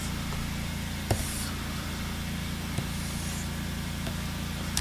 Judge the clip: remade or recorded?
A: recorded